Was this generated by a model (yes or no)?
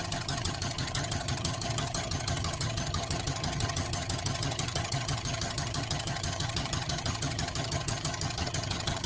yes